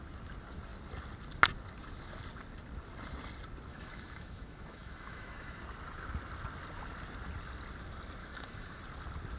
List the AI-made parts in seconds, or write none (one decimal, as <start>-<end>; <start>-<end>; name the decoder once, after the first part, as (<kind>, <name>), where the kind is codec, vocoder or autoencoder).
3.7-5.6 (autoencoder, DAC-VAE); 8.2-8.8